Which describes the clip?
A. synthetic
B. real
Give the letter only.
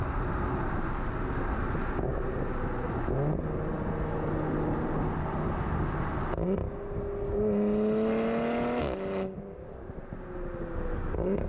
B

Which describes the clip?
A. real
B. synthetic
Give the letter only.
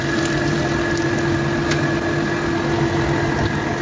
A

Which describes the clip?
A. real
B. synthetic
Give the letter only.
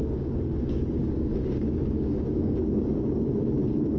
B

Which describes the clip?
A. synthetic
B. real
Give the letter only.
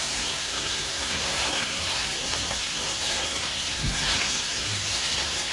A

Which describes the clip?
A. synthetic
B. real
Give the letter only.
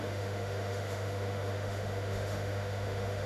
A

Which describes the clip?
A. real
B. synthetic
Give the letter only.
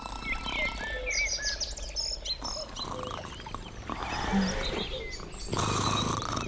A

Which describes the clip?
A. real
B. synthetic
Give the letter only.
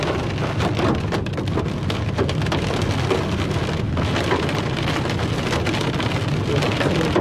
A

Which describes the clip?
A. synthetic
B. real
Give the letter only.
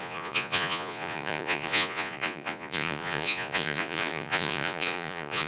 A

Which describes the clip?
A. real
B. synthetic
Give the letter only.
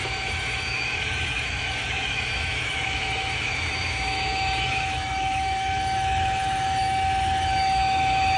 B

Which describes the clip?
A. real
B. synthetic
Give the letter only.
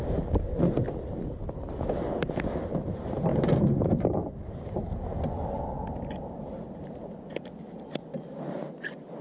A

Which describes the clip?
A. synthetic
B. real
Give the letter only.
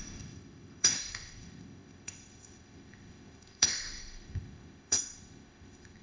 A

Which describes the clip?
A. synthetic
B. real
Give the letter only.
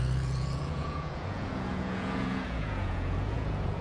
A